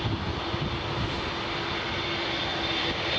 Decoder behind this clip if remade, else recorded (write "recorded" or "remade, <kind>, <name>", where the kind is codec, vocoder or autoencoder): recorded